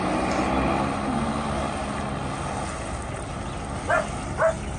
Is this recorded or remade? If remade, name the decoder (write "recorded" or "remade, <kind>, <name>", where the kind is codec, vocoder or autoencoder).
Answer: recorded